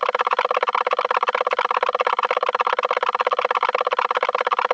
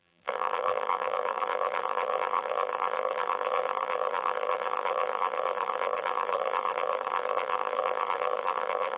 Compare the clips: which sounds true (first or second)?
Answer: first